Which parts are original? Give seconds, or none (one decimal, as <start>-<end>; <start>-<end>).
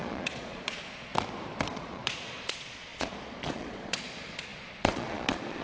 1.1-1.7